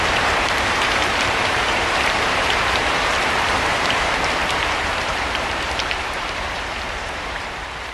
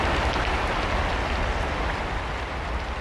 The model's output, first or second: first